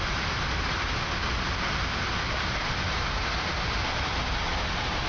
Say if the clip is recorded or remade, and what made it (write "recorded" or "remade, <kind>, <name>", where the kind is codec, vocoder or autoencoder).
recorded